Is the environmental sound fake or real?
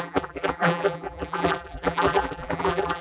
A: fake